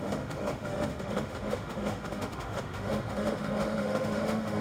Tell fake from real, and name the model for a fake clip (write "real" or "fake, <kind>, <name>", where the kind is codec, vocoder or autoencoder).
fake, autoencoder, DAC-VAE